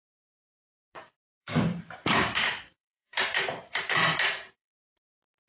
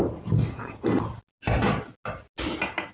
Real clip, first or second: second